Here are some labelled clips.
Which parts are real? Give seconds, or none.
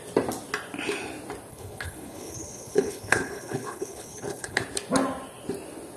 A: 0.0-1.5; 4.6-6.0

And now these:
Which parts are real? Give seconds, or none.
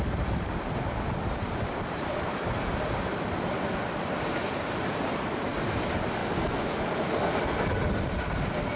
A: 6.2-8.8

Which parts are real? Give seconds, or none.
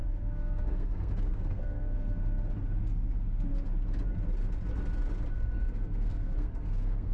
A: 2.2-5.3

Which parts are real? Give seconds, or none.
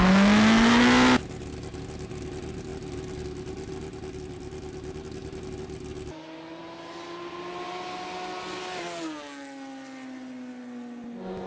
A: 0.0-11.5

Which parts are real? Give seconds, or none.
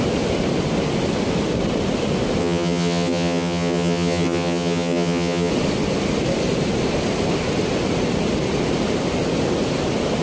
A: 0.0-2.4; 5.5-10.2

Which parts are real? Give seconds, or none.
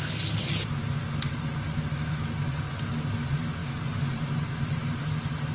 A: 0.0-5.5